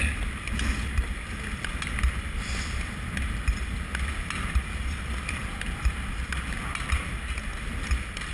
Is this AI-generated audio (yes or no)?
no